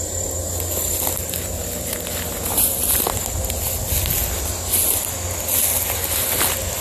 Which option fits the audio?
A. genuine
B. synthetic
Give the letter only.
A